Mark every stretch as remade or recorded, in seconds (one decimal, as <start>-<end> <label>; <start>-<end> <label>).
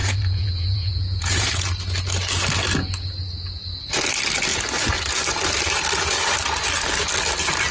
0.0-1.6 remade; 1.6-7.7 recorded